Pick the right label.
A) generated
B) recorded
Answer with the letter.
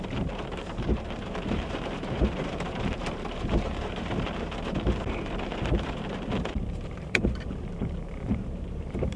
A